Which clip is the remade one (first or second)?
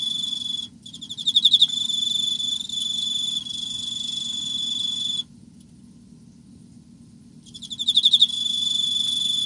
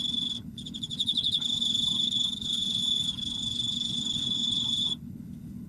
second